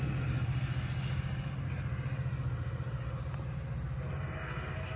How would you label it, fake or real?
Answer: real